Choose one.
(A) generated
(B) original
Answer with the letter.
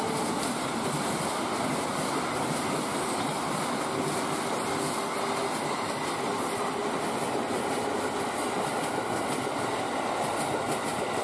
B